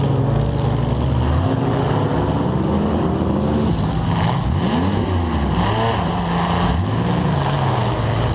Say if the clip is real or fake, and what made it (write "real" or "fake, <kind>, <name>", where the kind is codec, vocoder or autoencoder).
real